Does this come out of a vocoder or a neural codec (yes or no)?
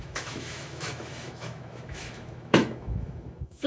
yes